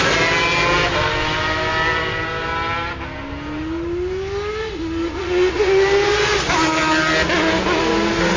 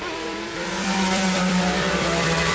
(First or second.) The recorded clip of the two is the first